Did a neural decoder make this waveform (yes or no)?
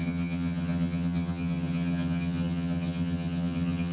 yes